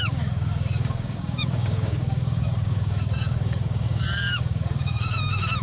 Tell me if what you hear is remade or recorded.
remade